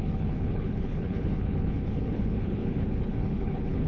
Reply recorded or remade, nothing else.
remade